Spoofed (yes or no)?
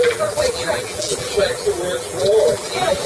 yes